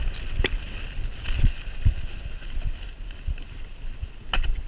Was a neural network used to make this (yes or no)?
no